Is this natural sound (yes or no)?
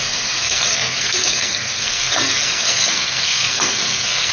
no